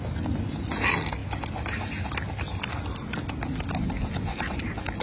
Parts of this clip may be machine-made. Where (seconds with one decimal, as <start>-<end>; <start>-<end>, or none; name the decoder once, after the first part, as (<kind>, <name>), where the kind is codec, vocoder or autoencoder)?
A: none